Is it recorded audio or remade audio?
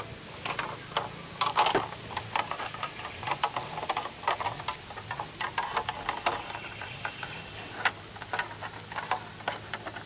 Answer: recorded